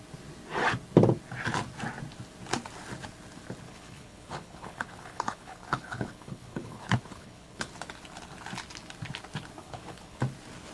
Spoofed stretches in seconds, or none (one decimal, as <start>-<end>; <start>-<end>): 3.7-7.7; 9.6-10.2